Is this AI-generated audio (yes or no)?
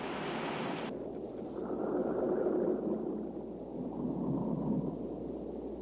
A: no